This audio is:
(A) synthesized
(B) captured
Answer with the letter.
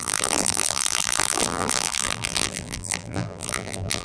A